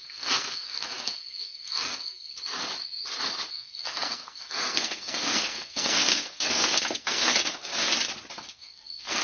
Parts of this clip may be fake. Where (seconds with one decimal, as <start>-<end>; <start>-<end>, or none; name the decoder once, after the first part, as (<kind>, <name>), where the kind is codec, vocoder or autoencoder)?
0.0-2.3 (codec, SNAC); 3.5-7.7; 8.5-9.2